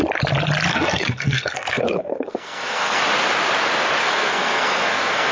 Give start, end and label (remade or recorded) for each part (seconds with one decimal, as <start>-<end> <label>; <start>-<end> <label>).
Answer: 0.0-0.7 recorded; 0.7-3.0 remade; 3.0-4.0 recorded; 4.0-5.3 remade